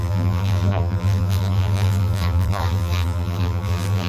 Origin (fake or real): fake